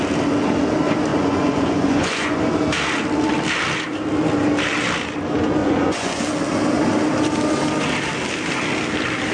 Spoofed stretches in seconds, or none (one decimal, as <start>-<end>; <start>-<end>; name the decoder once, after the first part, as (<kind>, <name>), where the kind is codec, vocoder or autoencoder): 1.1-2.4 (vocoder, Vocos); 5.6-6.2